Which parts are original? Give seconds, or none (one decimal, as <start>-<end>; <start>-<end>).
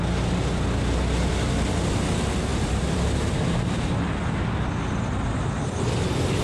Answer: 0.0-2.5; 4.5-6.4